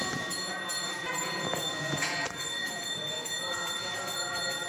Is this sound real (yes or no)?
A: no